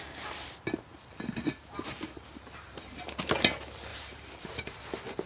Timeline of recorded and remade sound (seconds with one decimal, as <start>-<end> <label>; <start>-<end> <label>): 0.0-0.9 recorded; 0.9-2.9 remade; 2.9-3.9 recorded; 3.9-5.3 remade